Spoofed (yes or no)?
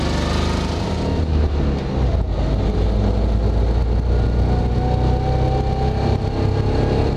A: no